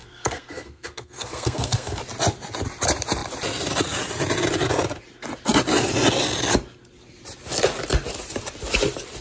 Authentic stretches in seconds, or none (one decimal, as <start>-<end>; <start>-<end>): 2.0-9.2